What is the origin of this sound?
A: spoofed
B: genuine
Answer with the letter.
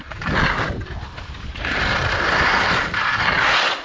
B